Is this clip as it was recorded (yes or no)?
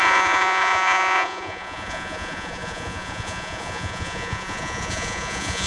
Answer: no